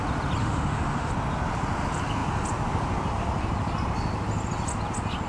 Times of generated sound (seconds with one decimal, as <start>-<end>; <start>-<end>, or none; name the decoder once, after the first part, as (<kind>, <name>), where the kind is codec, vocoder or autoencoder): 0.4-1.1 (autoencoder, DAC-VAE)